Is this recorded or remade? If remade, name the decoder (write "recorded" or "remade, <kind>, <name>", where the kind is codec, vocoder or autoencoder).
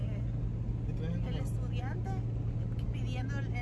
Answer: recorded